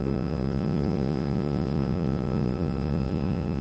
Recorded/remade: remade